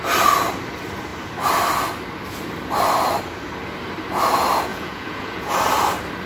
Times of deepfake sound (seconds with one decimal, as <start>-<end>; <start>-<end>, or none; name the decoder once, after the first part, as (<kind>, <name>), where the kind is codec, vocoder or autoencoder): 4.7-5.5 (vocoder, Vocos)